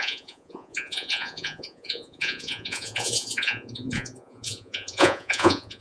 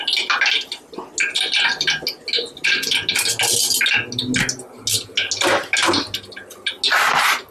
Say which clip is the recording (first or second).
second